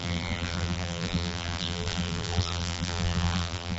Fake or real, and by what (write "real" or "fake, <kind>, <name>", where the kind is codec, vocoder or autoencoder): fake, vocoder, BigVGAN v2